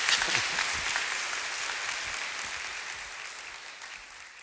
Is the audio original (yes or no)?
yes